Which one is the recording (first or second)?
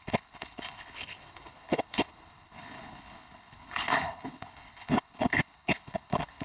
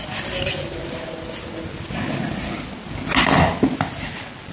second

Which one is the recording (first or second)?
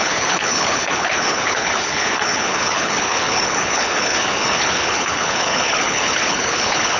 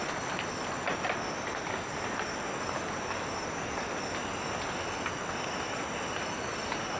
second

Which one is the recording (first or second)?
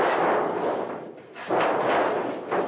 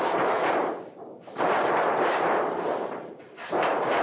first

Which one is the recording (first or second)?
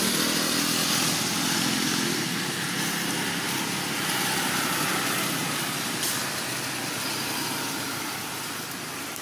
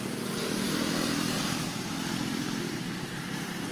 first